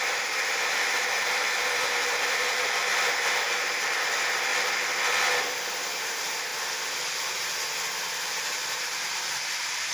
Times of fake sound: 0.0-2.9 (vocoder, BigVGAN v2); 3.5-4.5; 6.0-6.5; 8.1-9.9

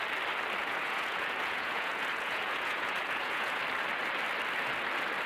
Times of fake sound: 0.6-3.6 (vocoder, Vocos)